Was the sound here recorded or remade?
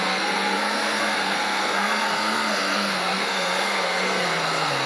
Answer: remade